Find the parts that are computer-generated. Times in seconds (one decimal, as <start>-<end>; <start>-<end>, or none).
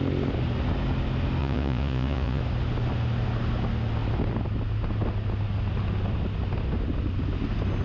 1.4-2.4